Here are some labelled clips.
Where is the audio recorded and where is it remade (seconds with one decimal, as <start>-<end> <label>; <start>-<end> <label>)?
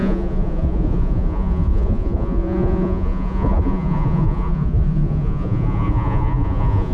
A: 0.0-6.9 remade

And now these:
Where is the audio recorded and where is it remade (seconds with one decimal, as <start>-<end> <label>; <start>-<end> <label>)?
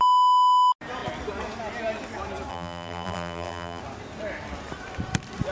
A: 0.0-2.5 recorded; 2.5-3.8 remade; 3.8-5.5 recorded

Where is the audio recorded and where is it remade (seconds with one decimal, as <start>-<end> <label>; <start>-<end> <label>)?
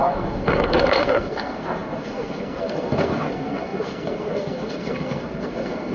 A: 0.0-5.9 remade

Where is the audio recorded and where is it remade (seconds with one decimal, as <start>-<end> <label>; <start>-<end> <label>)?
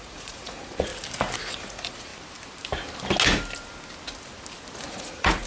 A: 0.0-0.9 remade; 0.9-1.4 recorded; 1.4-2.1 remade; 2.1-4.9 recorded; 4.9-5.5 remade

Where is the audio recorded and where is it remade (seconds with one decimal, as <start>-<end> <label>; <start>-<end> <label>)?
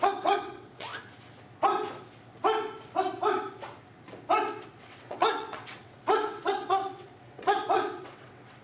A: 0.0-0.9 remade; 0.9-4.8 recorded; 4.8-8.6 remade